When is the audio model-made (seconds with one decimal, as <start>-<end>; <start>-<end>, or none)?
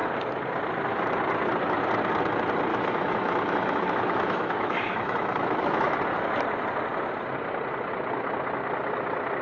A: 2.7-6.0